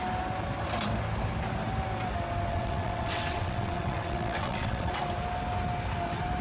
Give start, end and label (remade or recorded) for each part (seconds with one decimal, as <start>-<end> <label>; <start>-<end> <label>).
0.0-2.5 recorded; 2.5-4.9 remade; 4.9-6.4 recorded